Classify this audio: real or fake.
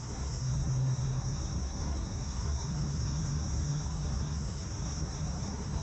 fake